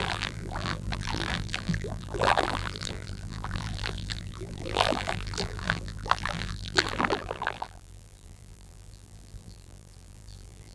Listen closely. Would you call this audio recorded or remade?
remade